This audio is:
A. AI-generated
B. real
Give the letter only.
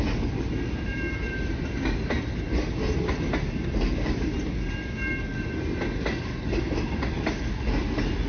B